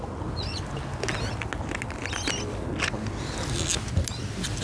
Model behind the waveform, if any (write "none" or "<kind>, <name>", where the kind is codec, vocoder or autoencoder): none